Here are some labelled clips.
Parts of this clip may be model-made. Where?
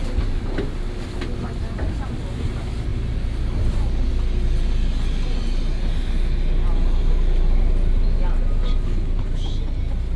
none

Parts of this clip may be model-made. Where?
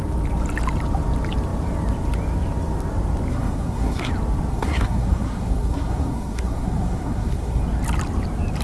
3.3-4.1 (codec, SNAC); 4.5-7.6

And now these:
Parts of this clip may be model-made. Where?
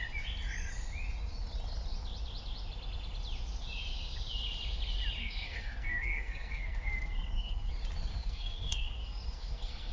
5.2-7.7 (codec, SNAC); 8.1-9.9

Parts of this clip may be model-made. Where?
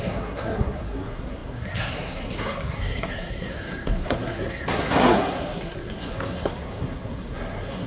0.0-7.9 (codec, SNAC)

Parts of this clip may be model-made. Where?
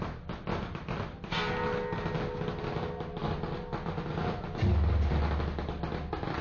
none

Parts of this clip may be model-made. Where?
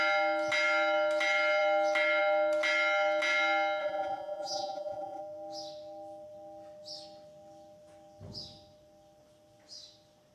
3.8-5.2 (vocoder, Vocos)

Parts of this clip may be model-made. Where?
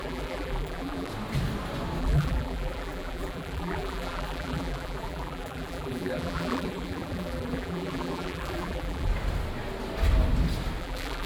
0.0-1.1 (vocoder, BigVGAN v2); 2.0-9.1; 10.8-11.3